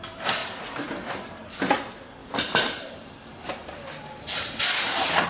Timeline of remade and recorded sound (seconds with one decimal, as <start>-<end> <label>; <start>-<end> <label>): 0.0-0.4 recorded; 0.4-1.3 remade; 1.3-2.2 recorded; 2.2-4.6 remade; 4.6-5.3 recorded